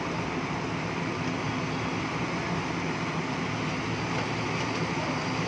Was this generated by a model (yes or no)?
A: no